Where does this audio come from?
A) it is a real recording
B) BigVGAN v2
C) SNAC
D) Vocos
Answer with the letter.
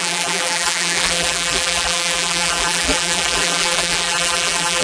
B